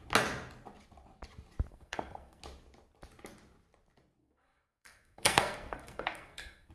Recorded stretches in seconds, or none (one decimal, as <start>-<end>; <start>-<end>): 0.0-1.7; 2.4-4.2